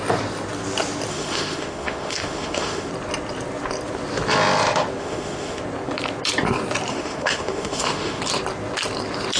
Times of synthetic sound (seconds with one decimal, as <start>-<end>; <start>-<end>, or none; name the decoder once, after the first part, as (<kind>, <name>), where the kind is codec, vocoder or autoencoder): 1.1-2.9 (autoencoder, DAC-VAE); 5.0-5.6; 6.9-8.2